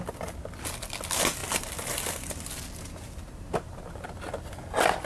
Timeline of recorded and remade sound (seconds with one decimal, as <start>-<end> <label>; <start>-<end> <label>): 0.0-5.1 recorded

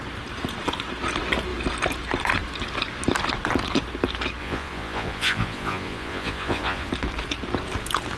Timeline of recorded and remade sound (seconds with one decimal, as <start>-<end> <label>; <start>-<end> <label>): 0.0-4.4 recorded; 4.4-6.9 remade; 6.9-8.2 recorded

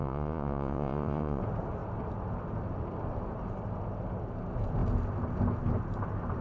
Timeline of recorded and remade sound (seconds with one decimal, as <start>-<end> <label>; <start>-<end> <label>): 0.0-1.4 remade; 1.4-6.4 recorded

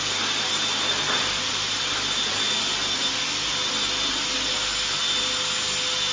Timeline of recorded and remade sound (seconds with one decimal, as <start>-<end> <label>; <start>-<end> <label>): 0.0-6.1 recorded

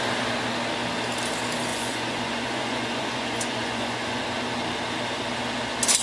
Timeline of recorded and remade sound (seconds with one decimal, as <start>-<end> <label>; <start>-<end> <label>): 0.0-1.7 recorded; 1.7-4.2 remade; 4.2-6.0 recorded